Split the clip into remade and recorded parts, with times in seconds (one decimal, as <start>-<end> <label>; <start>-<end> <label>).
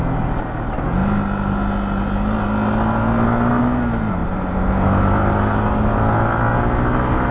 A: 0.0-4.2 recorded; 4.2-4.7 remade; 4.7-7.3 recorded